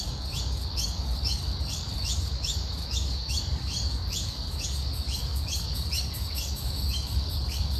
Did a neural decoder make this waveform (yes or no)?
yes